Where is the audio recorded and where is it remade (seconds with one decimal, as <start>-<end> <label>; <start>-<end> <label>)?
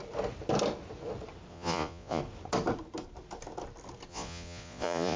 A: 0.0-1.5 recorded; 1.5-2.2 remade; 2.2-4.1 recorded; 4.1-5.2 remade